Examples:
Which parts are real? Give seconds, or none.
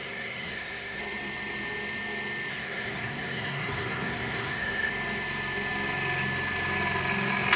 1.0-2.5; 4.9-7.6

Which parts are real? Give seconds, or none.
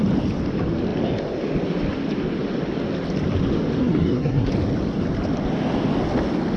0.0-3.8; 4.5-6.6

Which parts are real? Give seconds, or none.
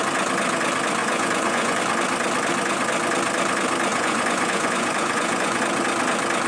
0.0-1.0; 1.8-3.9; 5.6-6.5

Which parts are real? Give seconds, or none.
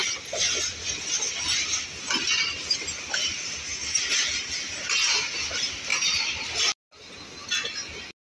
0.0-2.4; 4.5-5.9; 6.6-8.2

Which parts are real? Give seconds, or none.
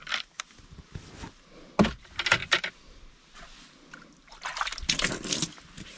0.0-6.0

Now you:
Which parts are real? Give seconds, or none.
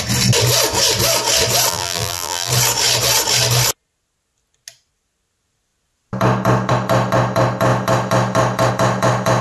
0.0-1.7; 2.5-9.4